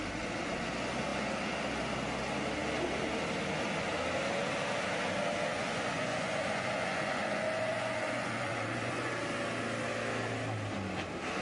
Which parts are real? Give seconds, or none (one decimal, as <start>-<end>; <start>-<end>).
0.0-5.5; 9.1-11.4